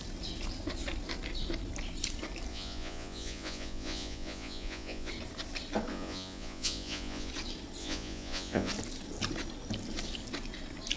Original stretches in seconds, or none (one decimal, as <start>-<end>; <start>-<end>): 0.0-2.5; 5.1-5.9; 7.3-7.8; 8.7-11.0